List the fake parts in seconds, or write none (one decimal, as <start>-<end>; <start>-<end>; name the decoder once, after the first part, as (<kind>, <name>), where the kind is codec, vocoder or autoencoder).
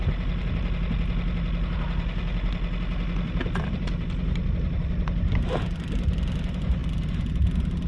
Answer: none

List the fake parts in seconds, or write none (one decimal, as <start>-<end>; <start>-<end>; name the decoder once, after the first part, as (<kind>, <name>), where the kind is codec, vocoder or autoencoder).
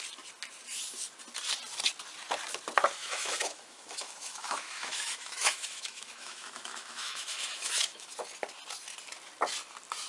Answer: 3.0-8.1 (autoencoder, DAC-VAE)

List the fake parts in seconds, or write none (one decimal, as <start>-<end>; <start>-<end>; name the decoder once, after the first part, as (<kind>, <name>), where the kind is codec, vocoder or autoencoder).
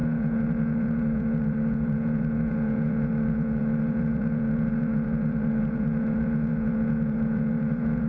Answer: 0.0-8.1 (vocoder, Vocos)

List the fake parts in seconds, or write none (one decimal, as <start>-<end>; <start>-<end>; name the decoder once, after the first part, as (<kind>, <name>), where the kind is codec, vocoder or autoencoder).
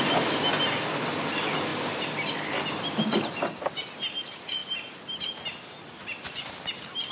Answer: none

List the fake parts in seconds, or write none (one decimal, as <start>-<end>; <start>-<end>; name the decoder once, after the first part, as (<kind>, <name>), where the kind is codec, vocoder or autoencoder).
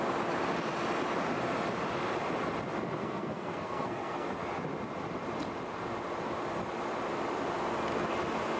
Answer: 3.0-4.4 (codec, SNAC)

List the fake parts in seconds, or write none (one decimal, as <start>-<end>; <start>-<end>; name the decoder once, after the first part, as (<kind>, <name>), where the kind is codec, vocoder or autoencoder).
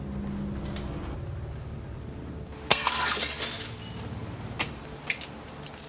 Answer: 2.7-3.2 (codec, SNAC)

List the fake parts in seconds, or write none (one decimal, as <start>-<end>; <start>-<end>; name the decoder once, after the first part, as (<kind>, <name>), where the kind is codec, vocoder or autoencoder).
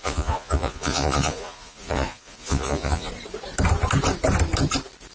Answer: 0.0-3.1 (vocoder, Vocos)